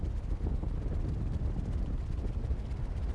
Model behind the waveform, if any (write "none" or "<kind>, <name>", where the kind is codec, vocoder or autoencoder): none